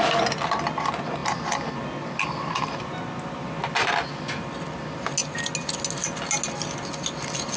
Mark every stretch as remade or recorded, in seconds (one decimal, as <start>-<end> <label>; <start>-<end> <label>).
0.0-7.6 recorded